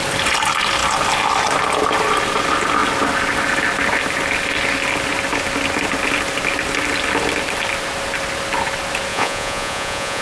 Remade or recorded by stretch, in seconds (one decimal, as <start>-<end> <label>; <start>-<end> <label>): 0.0-9.1 recorded; 9.1-10.2 remade